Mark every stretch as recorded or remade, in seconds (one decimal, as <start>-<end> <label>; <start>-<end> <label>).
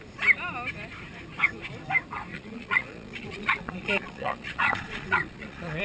0.0-2.3 recorded; 2.3-5.8 remade